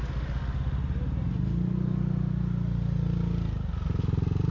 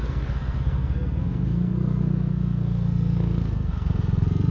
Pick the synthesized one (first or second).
second